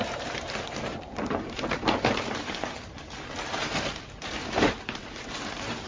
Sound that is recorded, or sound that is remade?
remade